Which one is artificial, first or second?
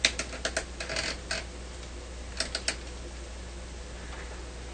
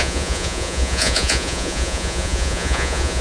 second